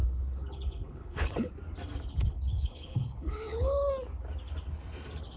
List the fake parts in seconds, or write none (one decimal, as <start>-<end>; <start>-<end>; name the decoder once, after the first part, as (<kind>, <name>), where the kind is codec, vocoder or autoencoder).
0.0-1.5 (codec, HILCodec); 2.1-3.9